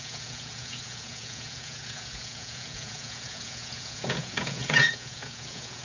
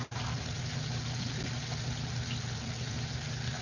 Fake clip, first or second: first